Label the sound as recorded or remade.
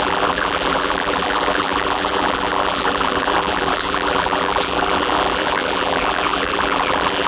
remade